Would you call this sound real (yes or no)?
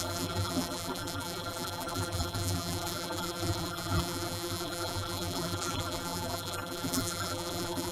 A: no